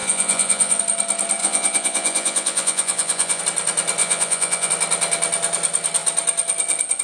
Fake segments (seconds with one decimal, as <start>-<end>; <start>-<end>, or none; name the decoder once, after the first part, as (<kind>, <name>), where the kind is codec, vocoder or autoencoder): 0.0-0.8 (vocoder, Vocos); 1.4-3.4; 4.0-4.7